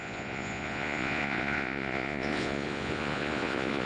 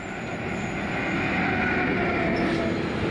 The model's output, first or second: first